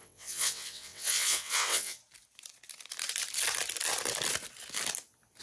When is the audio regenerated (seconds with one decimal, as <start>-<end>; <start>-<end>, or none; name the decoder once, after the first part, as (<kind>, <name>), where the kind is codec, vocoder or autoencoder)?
0.0-2.0 (vocoder, WaveNeXt)